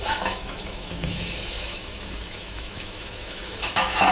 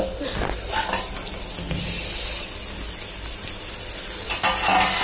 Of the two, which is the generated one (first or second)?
first